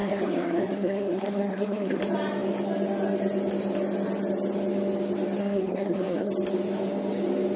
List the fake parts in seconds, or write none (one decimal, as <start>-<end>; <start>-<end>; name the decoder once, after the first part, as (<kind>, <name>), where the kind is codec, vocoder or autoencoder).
0.0-2.0 (codec, SNAC); 5.4-6.3